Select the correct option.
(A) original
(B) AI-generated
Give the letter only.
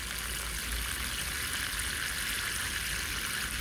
A